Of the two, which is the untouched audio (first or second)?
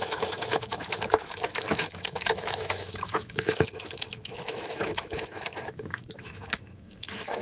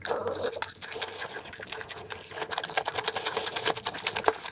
second